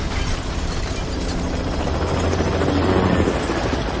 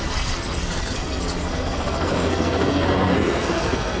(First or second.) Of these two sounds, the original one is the first